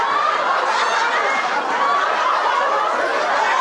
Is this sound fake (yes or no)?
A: no